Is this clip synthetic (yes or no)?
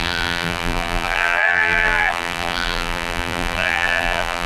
yes